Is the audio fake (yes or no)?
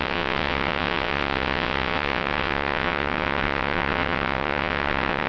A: yes